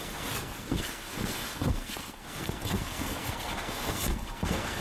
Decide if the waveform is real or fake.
fake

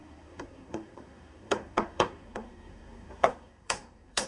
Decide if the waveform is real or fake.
fake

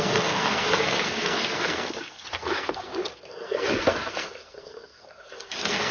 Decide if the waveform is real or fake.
fake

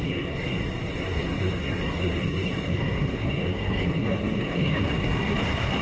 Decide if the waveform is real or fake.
fake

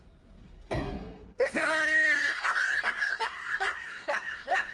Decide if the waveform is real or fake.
fake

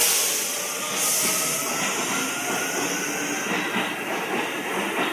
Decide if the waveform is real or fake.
real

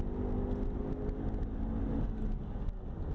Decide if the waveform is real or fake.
real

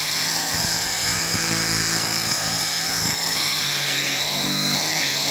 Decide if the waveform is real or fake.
fake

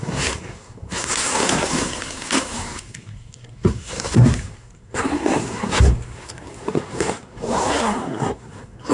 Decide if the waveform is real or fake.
fake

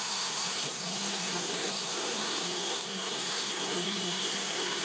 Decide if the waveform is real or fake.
fake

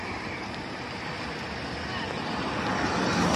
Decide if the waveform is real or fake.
real